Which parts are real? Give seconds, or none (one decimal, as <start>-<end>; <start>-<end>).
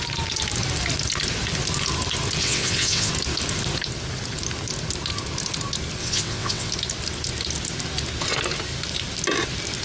0.0-2.4; 3.1-6.0; 6.7-9.8